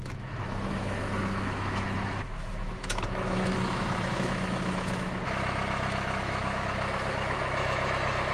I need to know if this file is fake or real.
fake